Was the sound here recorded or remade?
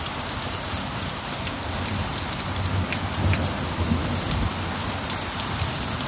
recorded